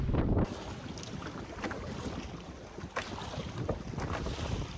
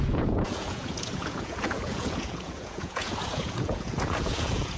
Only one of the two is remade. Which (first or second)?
second